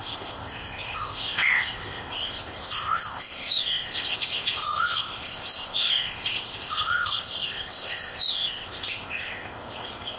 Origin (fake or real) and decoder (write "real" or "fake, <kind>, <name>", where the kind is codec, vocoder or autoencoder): fake, codec, ZipCodec